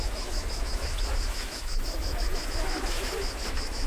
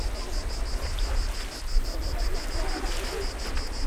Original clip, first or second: second